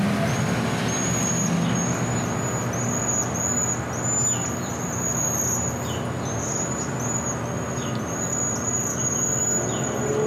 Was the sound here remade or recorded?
recorded